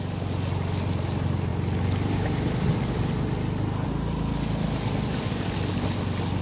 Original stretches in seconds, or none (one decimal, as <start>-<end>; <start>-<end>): 0.0-6.4